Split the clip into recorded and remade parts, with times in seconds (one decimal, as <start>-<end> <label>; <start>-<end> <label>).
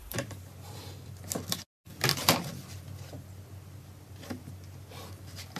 0.0-1.2 remade; 1.2-5.6 recorded